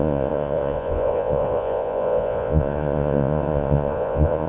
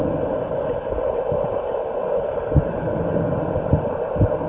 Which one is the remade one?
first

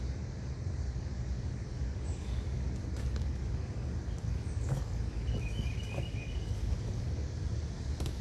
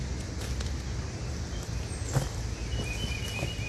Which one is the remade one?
first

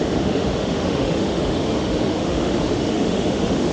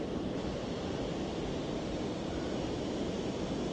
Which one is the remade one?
first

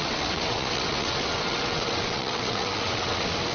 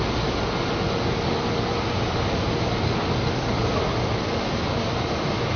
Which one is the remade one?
first